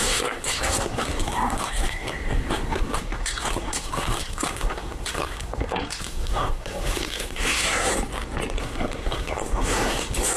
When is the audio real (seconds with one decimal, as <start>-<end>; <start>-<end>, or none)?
7.9-8.6